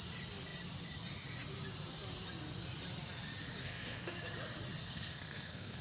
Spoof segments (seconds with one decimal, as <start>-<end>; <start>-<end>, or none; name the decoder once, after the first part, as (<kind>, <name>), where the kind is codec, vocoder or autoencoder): 3.6-4.1 (codec, SNAC); 4.8-5.8